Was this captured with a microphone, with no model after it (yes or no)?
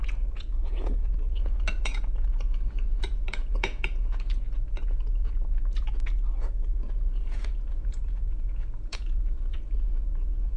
no